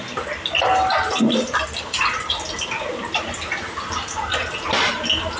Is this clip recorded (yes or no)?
yes